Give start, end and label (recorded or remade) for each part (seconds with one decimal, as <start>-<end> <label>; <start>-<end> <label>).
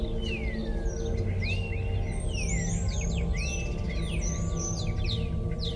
0.0-5.8 recorded